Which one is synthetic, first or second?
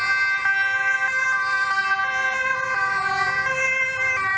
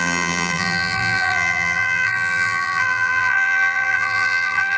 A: second